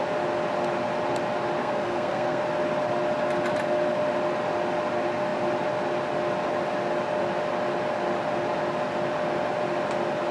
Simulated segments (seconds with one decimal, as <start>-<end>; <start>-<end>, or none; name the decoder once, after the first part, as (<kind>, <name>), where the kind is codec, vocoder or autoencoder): 1.6-2.4 (codec, SNAC)